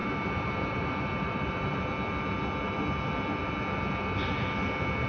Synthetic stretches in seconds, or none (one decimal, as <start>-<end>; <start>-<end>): 0.0-1.9

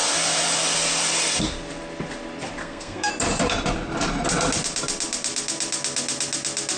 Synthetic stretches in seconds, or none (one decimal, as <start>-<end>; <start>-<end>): 2.6-3.1

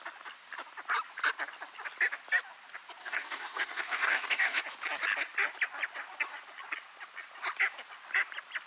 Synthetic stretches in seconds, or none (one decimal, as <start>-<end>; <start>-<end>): 3.0-4.6

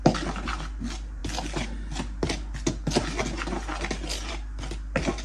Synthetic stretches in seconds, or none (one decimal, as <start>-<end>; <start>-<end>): none

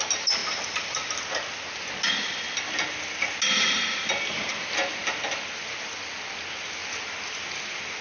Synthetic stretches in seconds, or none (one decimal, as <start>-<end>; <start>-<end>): 6.8-7.4

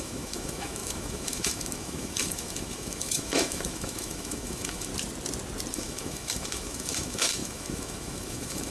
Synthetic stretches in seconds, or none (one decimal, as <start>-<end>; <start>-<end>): 0.0-4.9; 5.7-8.7